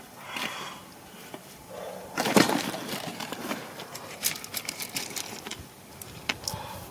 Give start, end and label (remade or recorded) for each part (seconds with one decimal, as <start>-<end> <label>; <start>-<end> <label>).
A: 0.0-1.1 recorded; 1.1-2.5 remade; 2.5-3.1 recorded; 3.1-3.7 remade; 3.7-6.9 recorded